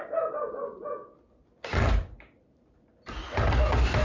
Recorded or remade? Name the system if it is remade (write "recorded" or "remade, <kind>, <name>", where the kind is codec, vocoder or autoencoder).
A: recorded